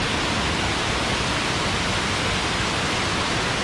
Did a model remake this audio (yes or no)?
no